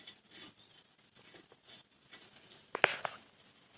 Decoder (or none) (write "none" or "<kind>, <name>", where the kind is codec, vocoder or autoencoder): none